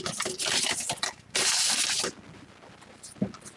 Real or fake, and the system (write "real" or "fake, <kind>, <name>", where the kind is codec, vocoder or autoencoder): real